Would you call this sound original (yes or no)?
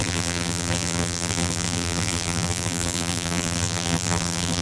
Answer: no